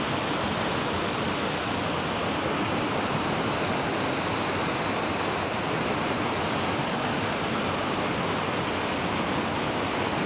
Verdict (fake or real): real